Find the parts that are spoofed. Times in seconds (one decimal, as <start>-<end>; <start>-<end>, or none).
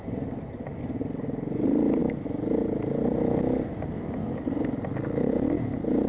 none